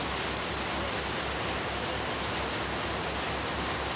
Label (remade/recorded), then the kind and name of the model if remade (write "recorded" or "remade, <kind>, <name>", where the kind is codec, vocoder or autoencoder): recorded